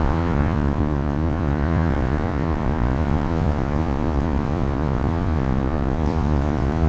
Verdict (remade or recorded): remade